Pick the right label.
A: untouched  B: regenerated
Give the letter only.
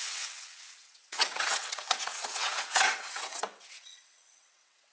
B